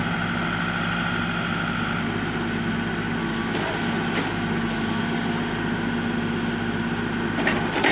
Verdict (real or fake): real